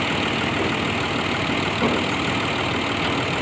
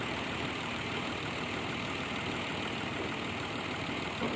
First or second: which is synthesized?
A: second